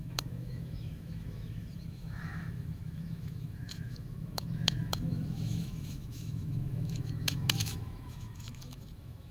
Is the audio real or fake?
fake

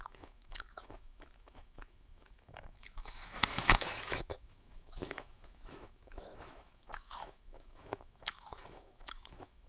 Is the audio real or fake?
fake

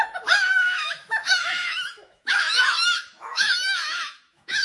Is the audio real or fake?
fake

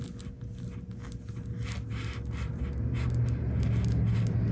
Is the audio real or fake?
real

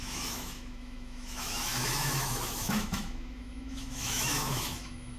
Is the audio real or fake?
fake